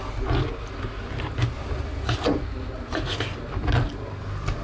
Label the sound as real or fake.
fake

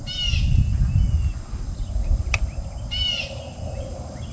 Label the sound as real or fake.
real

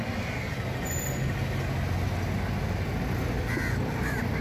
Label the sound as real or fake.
real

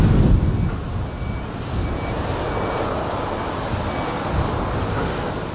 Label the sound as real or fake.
real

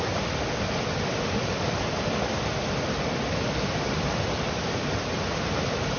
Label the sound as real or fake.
real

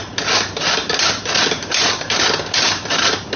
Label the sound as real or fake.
real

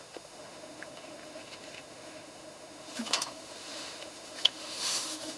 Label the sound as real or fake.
fake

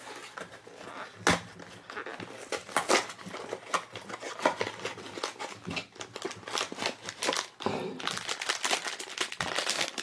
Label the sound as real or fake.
real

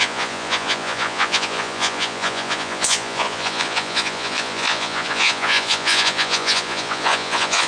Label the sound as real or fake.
fake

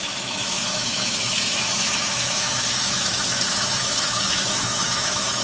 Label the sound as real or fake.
fake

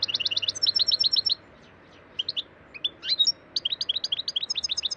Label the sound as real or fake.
real